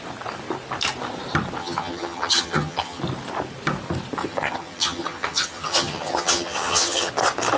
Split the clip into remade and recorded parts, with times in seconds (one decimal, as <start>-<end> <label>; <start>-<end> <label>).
0.0-1.6 recorded; 1.6-3.0 remade; 3.0-4.2 recorded; 4.2-7.1 remade; 7.1-7.6 recorded